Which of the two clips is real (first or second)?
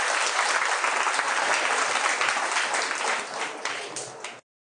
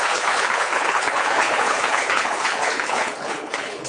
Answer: first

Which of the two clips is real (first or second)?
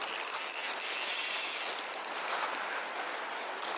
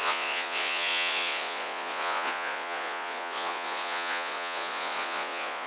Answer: first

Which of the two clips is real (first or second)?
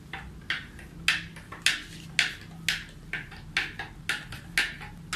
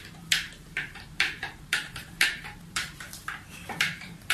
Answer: first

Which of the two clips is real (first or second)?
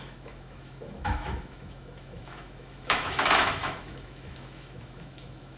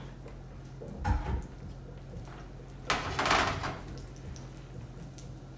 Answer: second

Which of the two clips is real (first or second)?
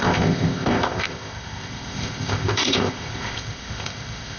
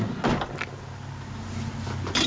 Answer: second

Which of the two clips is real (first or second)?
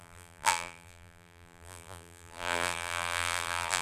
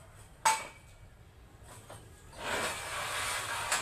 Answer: second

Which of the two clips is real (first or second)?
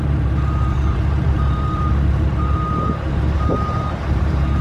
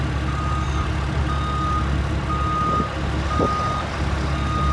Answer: second